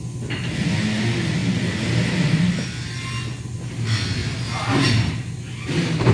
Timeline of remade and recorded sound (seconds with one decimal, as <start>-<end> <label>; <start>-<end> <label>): 0.0-6.1 recorded